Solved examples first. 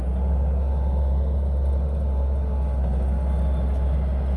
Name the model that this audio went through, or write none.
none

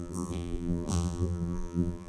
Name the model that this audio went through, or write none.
vocoder, BigVGAN v2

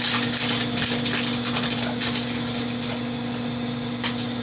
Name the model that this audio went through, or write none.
none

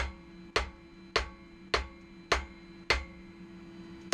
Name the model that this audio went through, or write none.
none